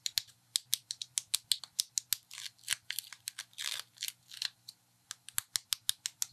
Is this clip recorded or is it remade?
recorded